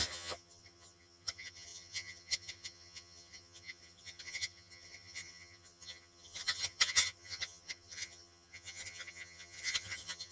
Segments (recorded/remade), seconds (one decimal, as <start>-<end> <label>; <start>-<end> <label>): 0.0-10.3 remade

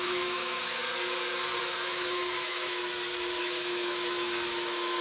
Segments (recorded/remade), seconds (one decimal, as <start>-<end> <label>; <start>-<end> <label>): 0.0-0.8 remade; 0.8-1.6 recorded; 1.6-2.8 remade; 2.8-3.4 recorded; 3.4-5.0 remade

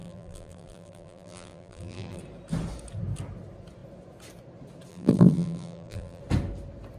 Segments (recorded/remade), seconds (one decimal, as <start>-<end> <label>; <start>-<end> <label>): 0.0-2.2 remade; 2.2-4.9 recorded; 4.9-6.2 remade; 6.2-7.0 recorded

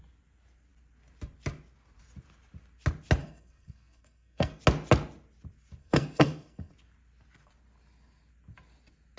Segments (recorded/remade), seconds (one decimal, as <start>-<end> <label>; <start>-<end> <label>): 0.0-3.2 recorded; 3.2-4.6 remade; 4.6-5.8 recorded; 5.8-6.7 remade; 6.7-9.2 recorded